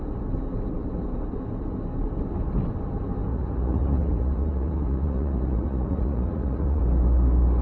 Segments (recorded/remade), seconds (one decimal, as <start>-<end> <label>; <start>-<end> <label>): 0.0-3.3 recorded; 3.3-6.8 remade; 6.8-7.6 recorded